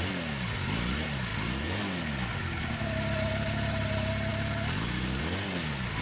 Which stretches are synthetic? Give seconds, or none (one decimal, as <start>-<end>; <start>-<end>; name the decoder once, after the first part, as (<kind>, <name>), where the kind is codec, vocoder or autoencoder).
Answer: none